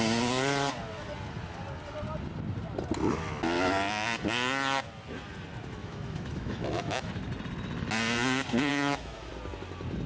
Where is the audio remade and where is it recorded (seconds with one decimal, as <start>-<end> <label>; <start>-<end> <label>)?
0.0-5.8 recorded; 5.8-7.1 remade; 7.1-8.7 recorded; 8.7-9.3 remade; 9.3-10.1 recorded